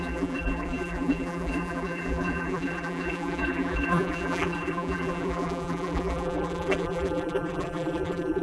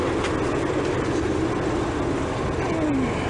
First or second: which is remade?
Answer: first